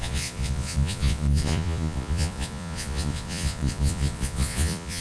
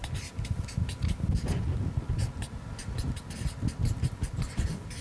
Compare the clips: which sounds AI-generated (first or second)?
first